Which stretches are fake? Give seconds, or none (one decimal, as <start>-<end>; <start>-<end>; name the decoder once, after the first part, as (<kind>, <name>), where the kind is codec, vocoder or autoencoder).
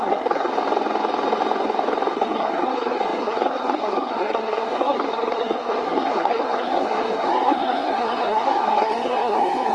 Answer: 0.0-0.5 (codec, SNAC); 2.1-9.7